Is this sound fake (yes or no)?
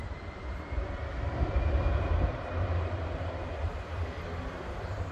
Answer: yes